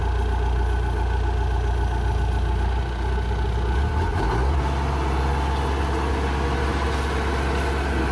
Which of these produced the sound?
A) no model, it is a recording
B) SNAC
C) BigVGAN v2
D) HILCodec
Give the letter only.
A